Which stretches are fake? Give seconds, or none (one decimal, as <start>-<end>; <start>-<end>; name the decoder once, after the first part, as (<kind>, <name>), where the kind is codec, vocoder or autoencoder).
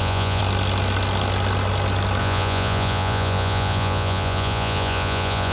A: 0.0-0.4 (vocoder, Vocos); 2.2-5.5